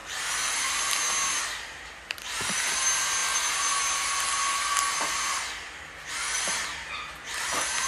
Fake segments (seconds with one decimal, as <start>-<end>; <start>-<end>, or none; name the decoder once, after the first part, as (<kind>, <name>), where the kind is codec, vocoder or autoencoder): none